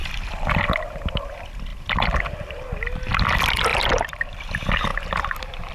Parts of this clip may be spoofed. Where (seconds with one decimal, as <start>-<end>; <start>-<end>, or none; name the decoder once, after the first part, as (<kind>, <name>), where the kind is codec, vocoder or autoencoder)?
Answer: 0.0-0.8 (vocoder, BigVGAN v2); 1.7-2.3; 3.7-4.5